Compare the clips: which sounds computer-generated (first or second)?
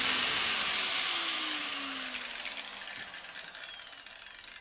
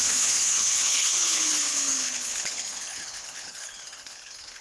second